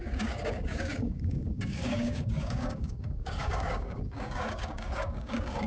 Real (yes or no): no